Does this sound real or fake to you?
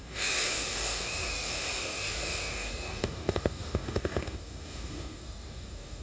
fake